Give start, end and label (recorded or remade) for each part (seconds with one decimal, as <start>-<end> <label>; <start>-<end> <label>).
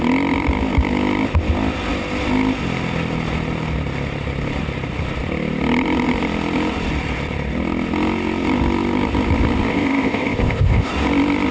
0.0-9.7 recorded; 9.7-10.9 remade; 10.9-11.5 recorded